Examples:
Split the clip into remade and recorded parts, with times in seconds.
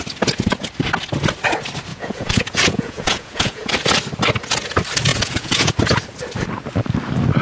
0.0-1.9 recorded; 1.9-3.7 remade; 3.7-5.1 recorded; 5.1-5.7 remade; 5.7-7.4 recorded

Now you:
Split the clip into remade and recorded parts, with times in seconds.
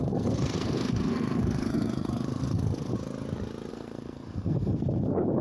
0.0-2.9 remade; 2.9-3.7 recorded; 3.7-5.4 remade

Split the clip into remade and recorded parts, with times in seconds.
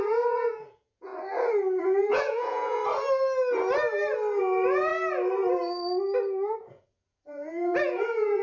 0.0-1.1 remade; 1.1-1.8 recorded; 1.8-2.8 remade; 2.8-4.4 recorded; 4.4-4.9 remade; 4.9-6.7 recorded; 6.7-8.4 remade